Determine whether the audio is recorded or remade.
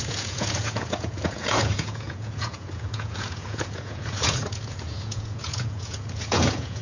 remade